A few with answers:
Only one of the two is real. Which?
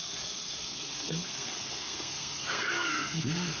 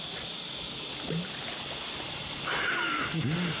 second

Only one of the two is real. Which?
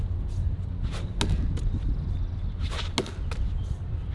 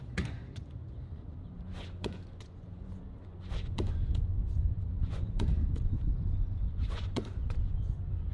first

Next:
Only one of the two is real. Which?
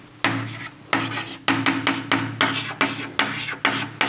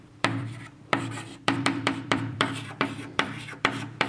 first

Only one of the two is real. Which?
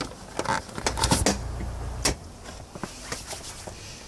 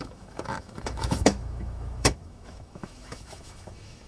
first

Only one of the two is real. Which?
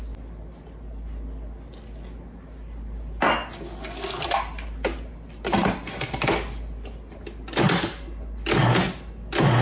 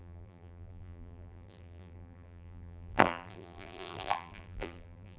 first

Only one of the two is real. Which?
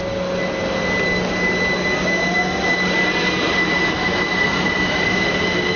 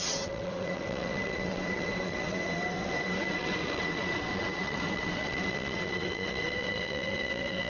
first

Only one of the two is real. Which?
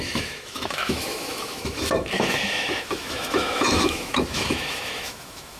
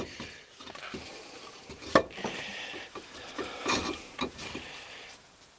second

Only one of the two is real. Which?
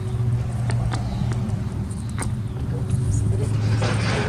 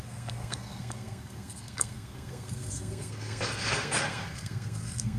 first